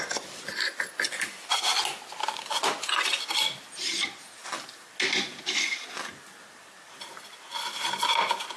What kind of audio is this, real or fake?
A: real